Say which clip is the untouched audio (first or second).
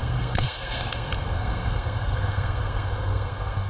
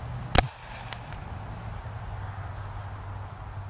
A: second